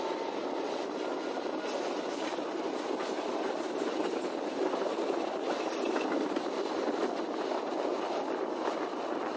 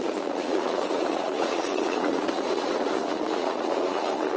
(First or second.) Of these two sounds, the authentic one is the first